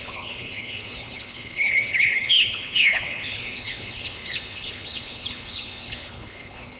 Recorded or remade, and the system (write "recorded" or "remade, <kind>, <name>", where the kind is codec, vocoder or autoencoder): remade, codec, HILCodec